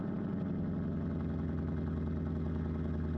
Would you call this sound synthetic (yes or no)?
no